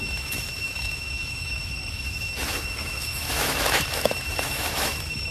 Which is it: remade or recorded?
remade